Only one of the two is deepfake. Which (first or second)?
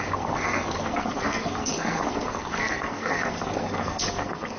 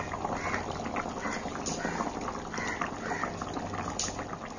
first